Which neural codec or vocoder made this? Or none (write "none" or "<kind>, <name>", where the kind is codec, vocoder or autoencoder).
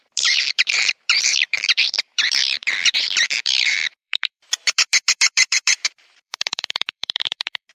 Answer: vocoder, BigVGAN v2